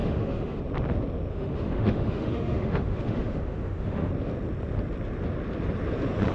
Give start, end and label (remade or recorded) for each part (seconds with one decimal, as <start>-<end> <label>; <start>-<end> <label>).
0.0-0.6 remade; 0.6-1.3 recorded; 1.3-4.1 remade; 4.1-6.3 recorded